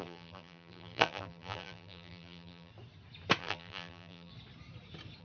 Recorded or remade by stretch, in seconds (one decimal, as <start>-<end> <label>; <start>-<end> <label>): 0.0-2.7 remade; 2.7-3.4 recorded; 3.4-4.3 remade; 4.3-5.2 recorded